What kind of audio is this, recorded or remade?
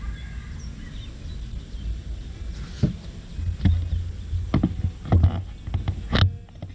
recorded